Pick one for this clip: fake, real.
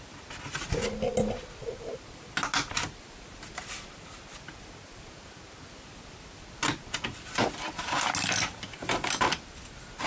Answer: real